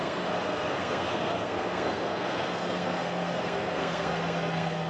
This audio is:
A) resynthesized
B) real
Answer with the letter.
A